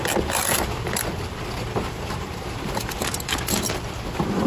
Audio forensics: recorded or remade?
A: recorded